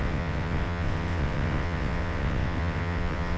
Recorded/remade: remade